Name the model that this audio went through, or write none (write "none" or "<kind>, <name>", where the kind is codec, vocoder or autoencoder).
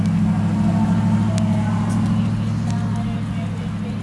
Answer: none